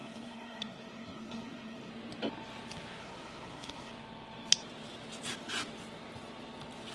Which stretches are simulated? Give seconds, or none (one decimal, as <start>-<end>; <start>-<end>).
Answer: 0.0-1.9; 3.0-3.9